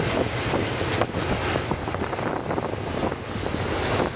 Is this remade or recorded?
recorded